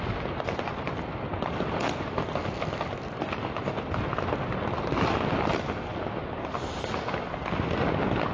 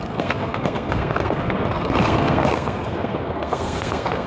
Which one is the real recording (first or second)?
first